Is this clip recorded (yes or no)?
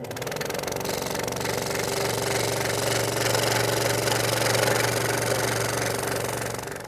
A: yes